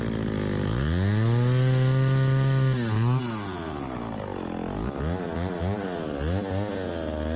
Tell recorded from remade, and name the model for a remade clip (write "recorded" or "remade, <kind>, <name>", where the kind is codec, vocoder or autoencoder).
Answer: recorded